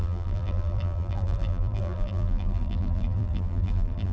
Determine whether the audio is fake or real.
fake